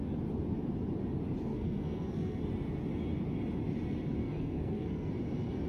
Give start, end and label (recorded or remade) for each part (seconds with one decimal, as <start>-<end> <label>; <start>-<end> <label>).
0.0-1.5 recorded; 1.5-2.4 remade; 2.4-4.2 recorded; 4.2-5.1 remade; 5.1-5.7 recorded